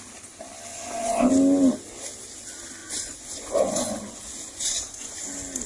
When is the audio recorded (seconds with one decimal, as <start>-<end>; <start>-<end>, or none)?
0.0-0.7; 1.3-2.8; 5.3-5.7